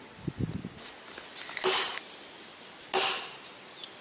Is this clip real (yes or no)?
yes